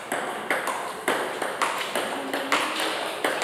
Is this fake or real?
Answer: real